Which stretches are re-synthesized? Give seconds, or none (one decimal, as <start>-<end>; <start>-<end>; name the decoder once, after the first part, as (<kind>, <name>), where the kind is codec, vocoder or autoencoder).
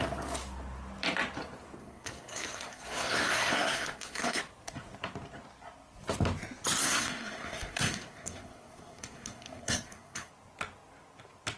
1.8-4.4 (codec, SNAC); 6.8-10.3